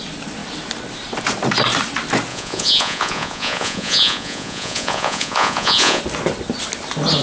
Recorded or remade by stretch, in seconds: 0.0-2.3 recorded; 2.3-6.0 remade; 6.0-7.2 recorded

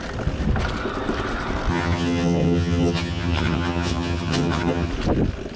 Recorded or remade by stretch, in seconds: 0.0-1.7 recorded; 1.7-4.9 remade; 4.9-5.6 recorded

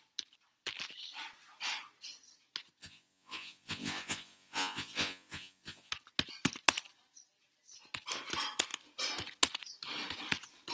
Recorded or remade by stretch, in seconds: 0.0-2.8 recorded; 2.8-5.9 remade; 5.9-10.7 recorded

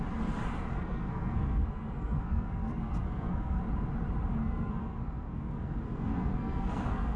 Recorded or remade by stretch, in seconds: 0.0-0.7 recorded; 0.7-3.6 remade; 3.6-4.3 recorded; 4.3-7.2 remade